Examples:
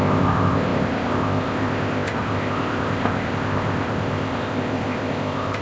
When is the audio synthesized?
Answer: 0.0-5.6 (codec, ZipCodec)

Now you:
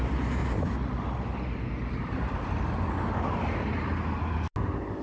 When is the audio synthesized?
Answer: none

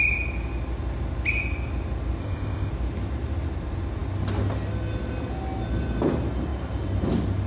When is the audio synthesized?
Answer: 2.2-2.7 (codec, ZipCodec)

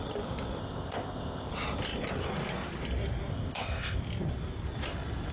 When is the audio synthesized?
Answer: 0.6-1.5 (codec, ZipCodec); 3.3-4.0

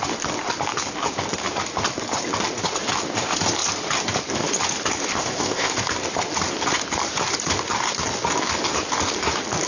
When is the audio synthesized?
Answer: 5.1-5.7 (codec, ZipCodec)

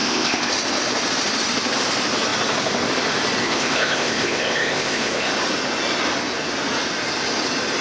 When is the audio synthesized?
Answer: 0.0-0.5 (codec, ZipCodec); 3.4-5.3

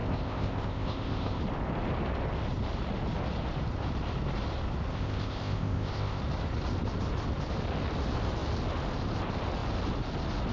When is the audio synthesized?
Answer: 0.0-1.4 (codec, ZipCodec); 4.9-6.2